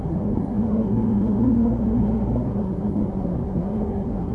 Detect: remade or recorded remade